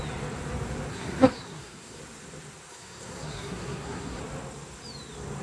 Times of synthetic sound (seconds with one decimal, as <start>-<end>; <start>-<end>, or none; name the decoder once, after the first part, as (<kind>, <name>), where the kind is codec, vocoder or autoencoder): 0.9-2.0 (codec, SNAC); 2.7-4.2